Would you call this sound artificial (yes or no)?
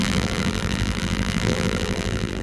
yes